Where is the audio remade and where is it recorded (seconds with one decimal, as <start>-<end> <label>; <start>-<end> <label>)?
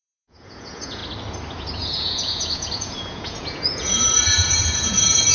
0.0-1.0 remade; 1.0-1.5 recorded; 1.5-5.3 remade